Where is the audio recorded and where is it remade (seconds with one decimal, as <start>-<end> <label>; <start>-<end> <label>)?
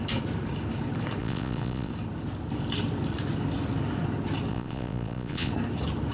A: 0.0-1.2 recorded; 1.2-1.9 remade; 1.9-4.5 recorded; 4.5-5.5 remade; 5.5-6.1 recorded